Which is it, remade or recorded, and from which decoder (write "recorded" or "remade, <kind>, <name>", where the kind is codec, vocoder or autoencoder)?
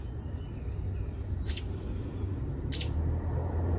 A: recorded